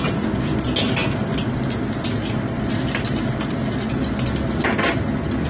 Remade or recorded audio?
recorded